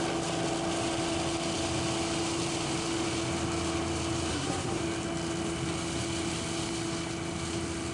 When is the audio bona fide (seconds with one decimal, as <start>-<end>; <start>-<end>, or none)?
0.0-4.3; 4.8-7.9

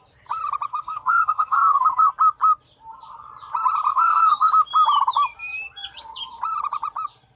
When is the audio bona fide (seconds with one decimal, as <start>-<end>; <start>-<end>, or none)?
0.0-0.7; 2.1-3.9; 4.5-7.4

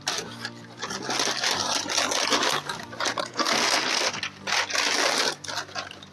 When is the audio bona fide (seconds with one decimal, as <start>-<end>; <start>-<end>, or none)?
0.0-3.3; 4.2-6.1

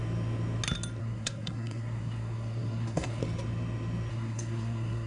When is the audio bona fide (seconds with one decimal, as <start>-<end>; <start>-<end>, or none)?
0.0-1.0; 3.2-4.1

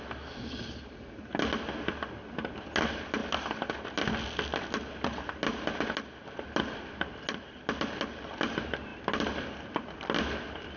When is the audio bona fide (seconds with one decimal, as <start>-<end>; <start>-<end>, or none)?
0.0-10.8